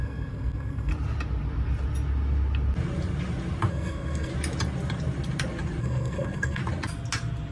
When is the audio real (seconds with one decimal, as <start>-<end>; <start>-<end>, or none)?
0.9-3.7; 4.3-5.8; 6.6-7.5